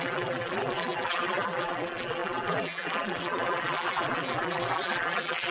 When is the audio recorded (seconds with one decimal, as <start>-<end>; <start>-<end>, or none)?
none

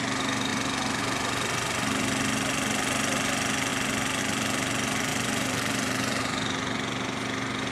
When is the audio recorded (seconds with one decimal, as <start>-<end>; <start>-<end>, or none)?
0.0-5.1; 6.2-7.7

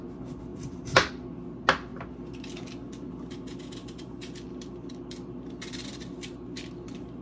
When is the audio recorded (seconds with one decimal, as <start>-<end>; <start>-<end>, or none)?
0.0-0.5; 1.1-3.8; 4.5-7.2

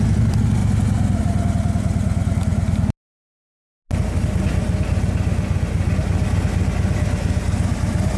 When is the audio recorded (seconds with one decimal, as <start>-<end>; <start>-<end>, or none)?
0.0-8.2

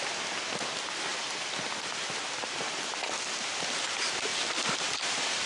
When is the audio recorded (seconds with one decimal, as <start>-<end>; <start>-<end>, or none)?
0.0-1.1; 2.4-4.3

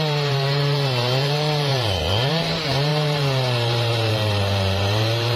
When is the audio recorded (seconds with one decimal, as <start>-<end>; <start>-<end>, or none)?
none

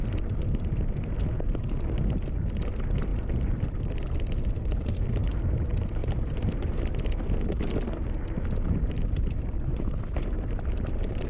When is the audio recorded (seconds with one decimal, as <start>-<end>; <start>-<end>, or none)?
0.7-3.1; 4.9-6.0; 6.5-11.3